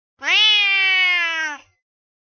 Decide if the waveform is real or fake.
real